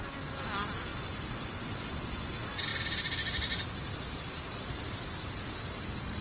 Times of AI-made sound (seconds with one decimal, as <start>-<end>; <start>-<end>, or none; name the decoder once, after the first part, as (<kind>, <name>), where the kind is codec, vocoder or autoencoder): 0.9-2.3 (vocoder, Vocos)